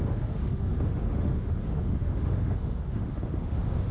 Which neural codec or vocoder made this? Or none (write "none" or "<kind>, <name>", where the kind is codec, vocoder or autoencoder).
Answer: autoencoder, DAC-VAE